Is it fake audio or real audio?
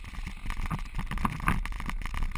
real